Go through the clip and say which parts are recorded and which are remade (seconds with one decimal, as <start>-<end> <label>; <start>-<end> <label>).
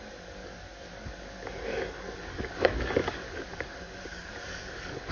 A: 0.0-5.1 remade